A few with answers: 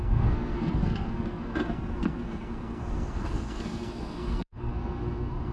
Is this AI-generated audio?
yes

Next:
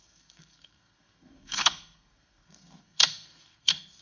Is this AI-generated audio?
yes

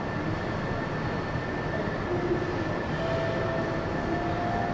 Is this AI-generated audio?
no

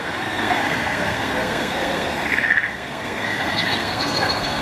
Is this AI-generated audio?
yes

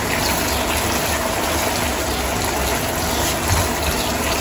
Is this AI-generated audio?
no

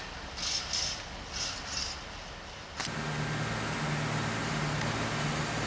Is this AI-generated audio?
no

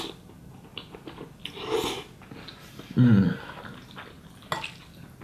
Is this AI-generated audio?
no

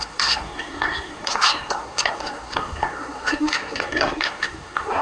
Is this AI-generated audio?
yes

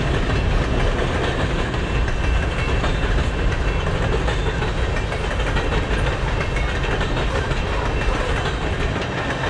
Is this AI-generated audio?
no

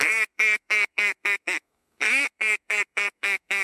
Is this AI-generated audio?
yes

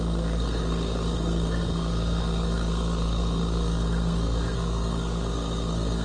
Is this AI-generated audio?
yes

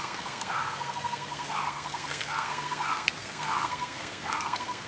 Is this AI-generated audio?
yes